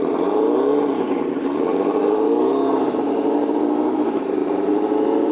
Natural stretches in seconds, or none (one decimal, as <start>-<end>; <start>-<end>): 0.0-5.3